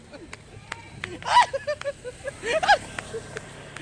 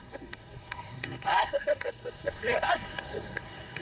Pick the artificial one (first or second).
second